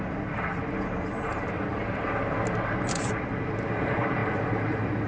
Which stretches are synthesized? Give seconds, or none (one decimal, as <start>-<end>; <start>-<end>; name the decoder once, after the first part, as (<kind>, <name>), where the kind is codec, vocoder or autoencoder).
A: 1.3-1.9 (vocoder, BigVGAN v2); 4.2-5.1